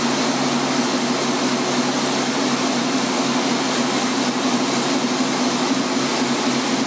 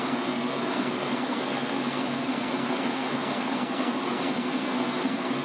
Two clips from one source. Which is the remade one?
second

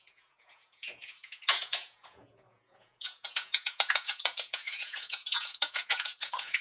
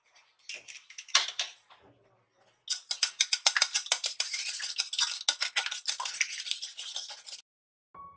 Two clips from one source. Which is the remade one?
first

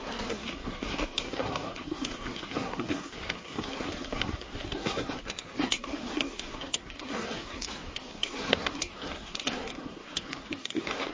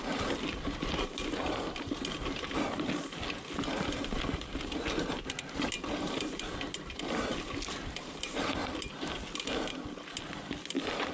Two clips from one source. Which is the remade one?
first